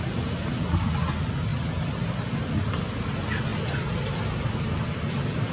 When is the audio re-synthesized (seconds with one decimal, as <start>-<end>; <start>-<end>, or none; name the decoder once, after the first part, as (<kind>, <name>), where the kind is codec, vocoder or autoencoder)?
none